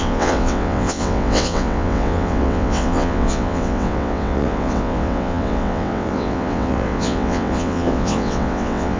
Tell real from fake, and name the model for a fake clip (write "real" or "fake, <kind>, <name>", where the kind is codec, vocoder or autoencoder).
fake, vocoder, WaveNeXt